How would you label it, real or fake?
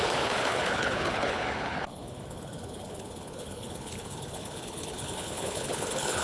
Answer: fake